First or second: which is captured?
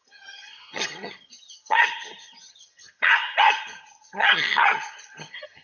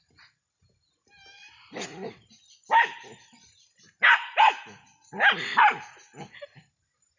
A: second